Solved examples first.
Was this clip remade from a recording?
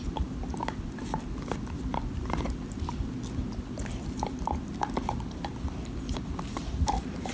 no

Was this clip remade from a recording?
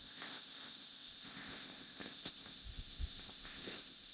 yes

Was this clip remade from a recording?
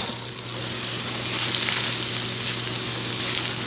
no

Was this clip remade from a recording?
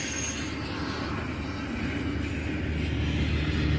no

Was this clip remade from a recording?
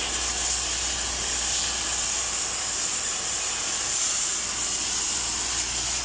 no